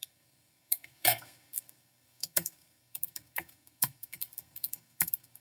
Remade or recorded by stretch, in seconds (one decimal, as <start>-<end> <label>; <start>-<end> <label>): 0.0-5.4 remade